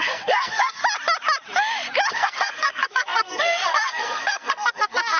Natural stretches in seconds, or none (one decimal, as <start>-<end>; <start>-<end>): 0.8-2.1